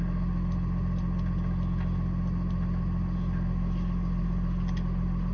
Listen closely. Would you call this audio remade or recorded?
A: recorded